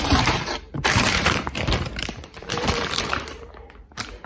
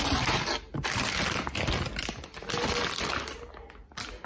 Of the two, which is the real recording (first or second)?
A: second